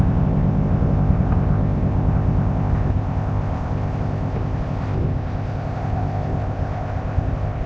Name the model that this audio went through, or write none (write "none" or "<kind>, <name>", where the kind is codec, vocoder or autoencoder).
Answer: codec, ZipCodec